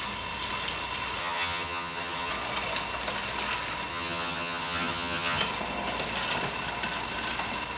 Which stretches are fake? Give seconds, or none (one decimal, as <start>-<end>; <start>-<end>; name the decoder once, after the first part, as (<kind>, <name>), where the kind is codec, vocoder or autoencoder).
1.2-2.3 (vocoder, HiFi-GAN); 3.9-5.4